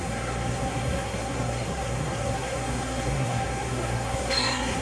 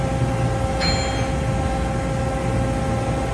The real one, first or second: second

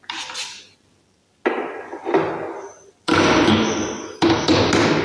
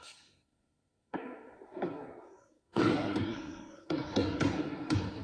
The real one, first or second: first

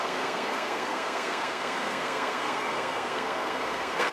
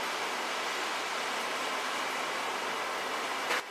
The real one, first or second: second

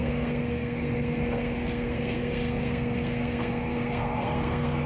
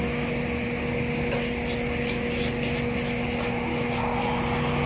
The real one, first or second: second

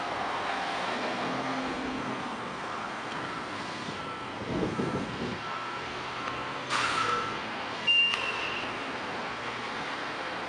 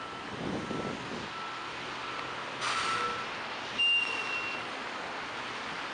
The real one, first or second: second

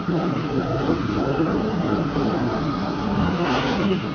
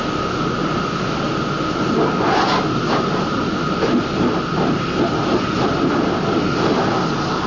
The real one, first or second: second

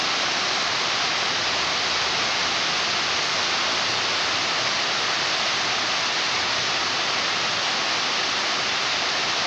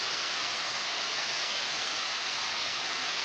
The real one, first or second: first